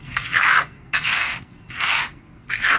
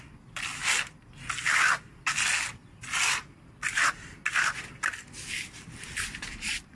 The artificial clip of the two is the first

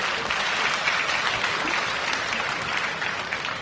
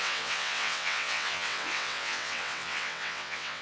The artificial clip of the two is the second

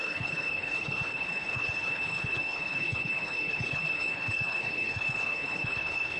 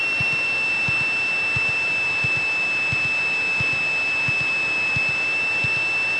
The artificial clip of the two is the first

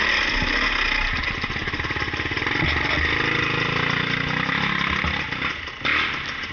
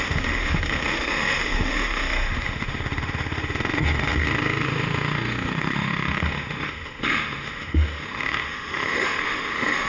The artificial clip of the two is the second